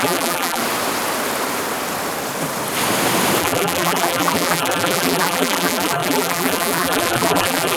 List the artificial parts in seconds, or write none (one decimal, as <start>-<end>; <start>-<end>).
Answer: 0.0-0.6; 3.4-7.8